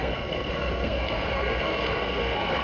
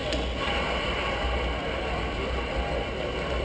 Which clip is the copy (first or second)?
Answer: first